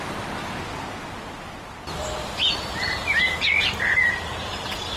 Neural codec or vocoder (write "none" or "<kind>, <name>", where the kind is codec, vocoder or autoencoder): none